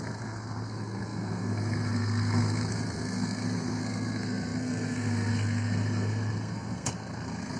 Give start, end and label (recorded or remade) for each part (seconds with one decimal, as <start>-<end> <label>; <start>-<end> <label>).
0.0-7.6 remade